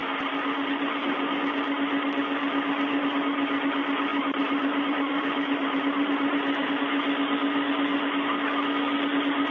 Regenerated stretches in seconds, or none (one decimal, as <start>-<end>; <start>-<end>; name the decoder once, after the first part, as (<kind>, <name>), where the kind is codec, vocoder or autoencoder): 4.1-6.7 (vocoder, BigVGAN v2)